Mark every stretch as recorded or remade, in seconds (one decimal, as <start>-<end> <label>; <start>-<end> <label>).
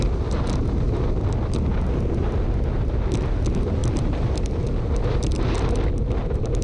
0.0-3.8 recorded; 3.8-6.6 remade